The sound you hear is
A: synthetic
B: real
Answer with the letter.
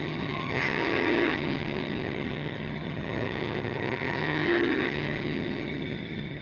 A